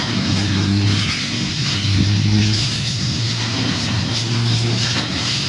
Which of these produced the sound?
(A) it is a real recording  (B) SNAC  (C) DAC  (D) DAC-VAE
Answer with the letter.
B